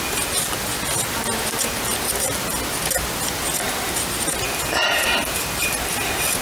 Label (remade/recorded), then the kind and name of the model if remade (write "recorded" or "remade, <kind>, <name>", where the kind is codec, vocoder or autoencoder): recorded